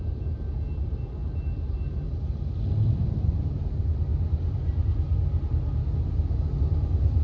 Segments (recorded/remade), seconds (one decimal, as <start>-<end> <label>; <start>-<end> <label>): 0.0-7.2 recorded